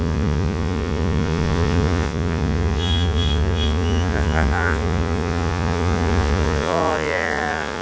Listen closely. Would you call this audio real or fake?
fake